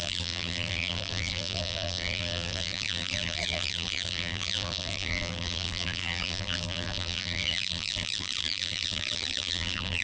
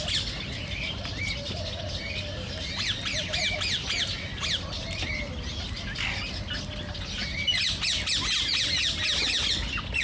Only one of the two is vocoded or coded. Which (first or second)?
first